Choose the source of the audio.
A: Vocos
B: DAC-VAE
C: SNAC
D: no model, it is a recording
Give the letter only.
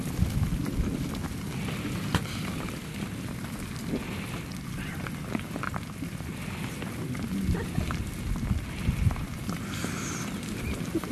D